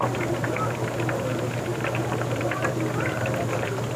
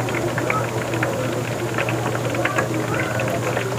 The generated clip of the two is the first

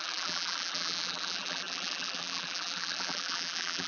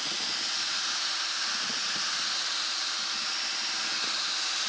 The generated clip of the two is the first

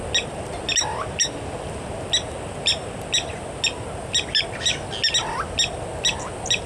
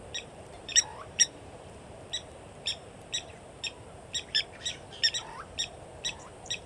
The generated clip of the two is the second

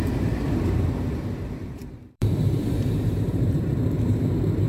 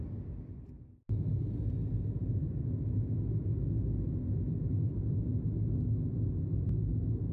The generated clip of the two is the first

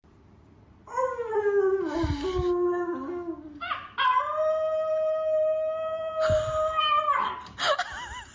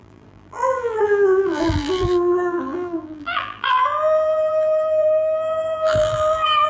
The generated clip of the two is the second